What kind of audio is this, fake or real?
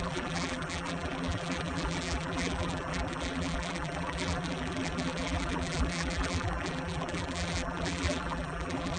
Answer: fake